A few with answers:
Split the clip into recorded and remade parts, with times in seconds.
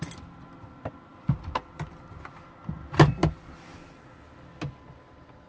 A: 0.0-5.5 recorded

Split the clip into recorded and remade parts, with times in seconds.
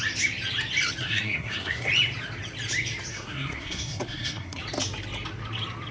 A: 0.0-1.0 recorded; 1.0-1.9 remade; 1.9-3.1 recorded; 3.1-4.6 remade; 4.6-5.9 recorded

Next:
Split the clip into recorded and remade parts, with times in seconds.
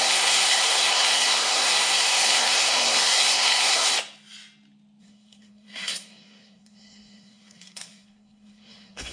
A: 0.0-3.9 remade; 3.9-5.0 recorded; 5.0-9.1 remade